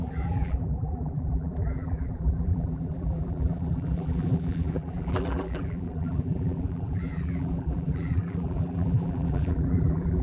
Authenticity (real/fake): fake